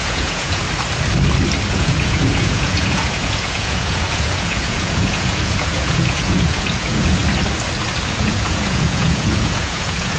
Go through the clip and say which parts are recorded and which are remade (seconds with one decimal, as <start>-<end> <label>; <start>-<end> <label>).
0.0-0.6 remade; 0.6-1.7 recorded; 1.7-7.2 remade; 7.2-8.2 recorded; 8.2-10.2 remade

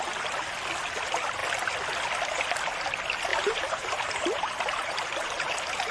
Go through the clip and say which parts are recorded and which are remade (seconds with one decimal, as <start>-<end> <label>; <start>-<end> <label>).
0.0-3.3 recorded; 3.3-5.9 remade

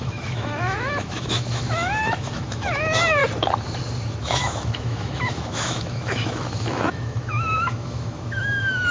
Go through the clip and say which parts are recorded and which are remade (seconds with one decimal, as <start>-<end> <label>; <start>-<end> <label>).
0.0-3.2 remade; 3.2-4.2 recorded; 4.2-8.9 remade

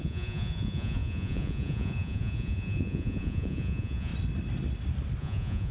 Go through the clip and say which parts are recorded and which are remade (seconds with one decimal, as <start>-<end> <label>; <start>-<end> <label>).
0.0-4.1 remade; 4.1-5.2 recorded; 5.2-5.7 remade

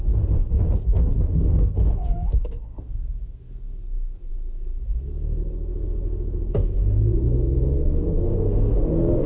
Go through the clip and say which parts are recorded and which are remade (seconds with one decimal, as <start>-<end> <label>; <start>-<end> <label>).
0.0-4.3 remade; 4.3-4.9 recorded; 4.9-9.3 remade